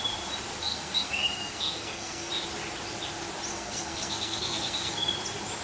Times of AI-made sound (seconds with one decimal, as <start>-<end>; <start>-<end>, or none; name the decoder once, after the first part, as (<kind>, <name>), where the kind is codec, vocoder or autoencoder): 0.6-2.3 (codec, SNAC); 3.5-5.1